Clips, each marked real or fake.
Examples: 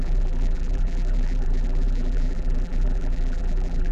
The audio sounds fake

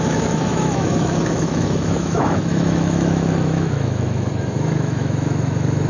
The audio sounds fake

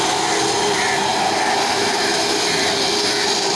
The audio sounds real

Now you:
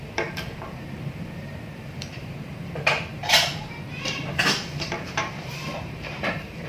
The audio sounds fake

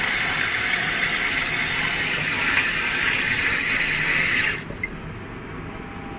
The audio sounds real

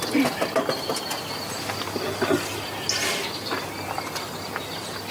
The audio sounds real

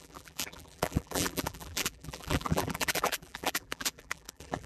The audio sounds fake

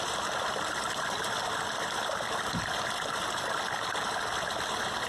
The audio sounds real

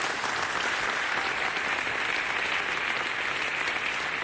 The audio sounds real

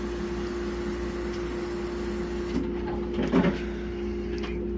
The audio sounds real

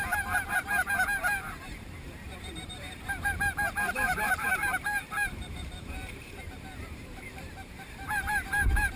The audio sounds fake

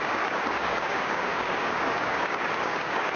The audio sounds fake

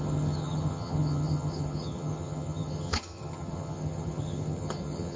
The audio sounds fake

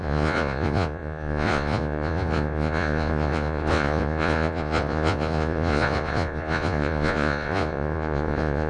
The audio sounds fake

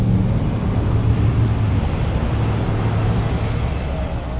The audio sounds real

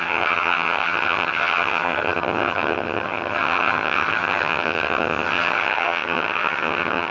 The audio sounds fake